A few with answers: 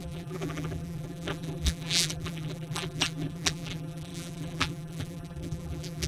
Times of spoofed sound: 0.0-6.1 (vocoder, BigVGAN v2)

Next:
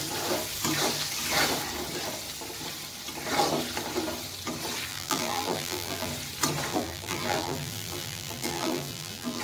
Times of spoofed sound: 4.9-6.1 (vocoder, BigVGAN v2); 6.7-9.4

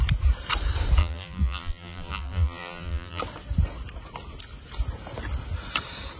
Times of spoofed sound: 1.0-3.2 (vocoder, BigVGAN v2)

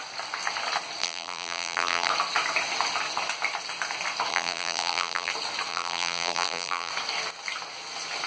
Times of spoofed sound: 1.0-2.1 (vocoder, BigVGAN v2); 4.3-5.3; 5.7-6.9

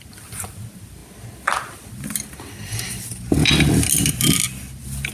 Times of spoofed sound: none

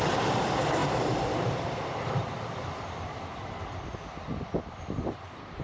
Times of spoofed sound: 0.0-3.3 (vocoder, BigVGAN v2); 4.5-5.6

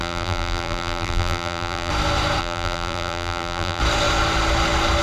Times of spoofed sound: 0.0-1.9 (vocoder, BigVGAN v2); 2.4-3.8